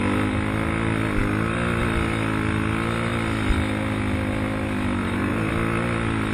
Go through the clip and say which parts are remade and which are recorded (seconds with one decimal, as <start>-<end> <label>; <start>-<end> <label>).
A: 0.0-5.0 recorded; 5.0-5.5 remade; 5.5-6.3 recorded